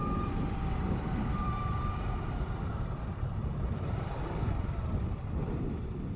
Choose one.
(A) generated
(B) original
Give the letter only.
A